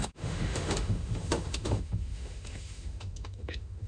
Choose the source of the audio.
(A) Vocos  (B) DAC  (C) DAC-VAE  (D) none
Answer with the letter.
C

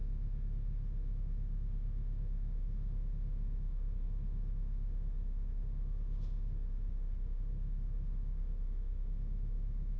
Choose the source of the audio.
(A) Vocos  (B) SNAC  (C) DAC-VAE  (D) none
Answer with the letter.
C